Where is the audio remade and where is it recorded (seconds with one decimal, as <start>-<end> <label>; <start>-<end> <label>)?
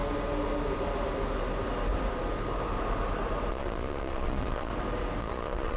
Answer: 0.0-3.5 recorded; 3.5-4.7 remade; 4.7-5.2 recorded; 5.2-5.8 remade